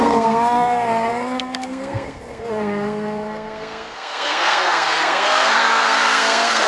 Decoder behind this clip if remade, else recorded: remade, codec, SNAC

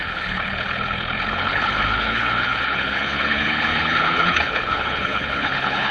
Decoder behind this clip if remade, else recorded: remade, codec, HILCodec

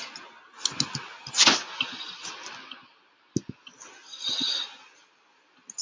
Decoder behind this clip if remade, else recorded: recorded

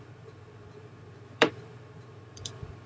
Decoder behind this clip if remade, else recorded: remade, vocoder, BigVGAN v2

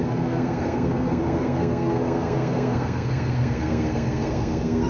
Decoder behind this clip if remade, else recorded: remade, codec, SNAC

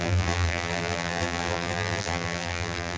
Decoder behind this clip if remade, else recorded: remade, vocoder, BigVGAN v2